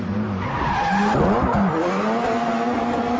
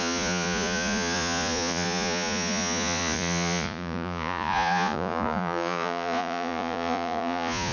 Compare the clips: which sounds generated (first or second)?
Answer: second